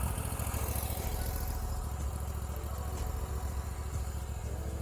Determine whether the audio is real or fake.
real